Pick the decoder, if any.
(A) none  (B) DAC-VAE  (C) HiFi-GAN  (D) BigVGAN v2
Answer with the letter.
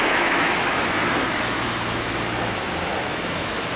B